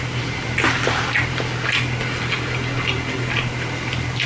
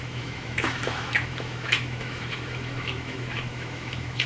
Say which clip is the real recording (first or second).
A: first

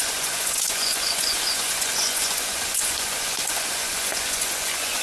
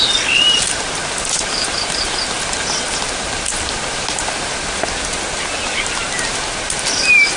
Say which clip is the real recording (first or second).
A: second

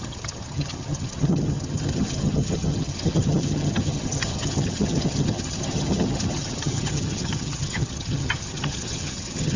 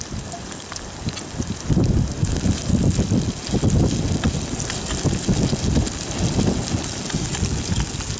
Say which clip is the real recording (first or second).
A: second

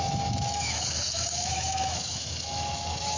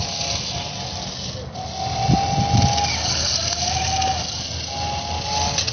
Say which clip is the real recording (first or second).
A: second